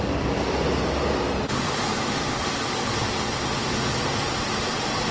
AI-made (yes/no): no